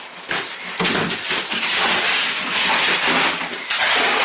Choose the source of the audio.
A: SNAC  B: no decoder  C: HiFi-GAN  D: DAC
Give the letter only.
B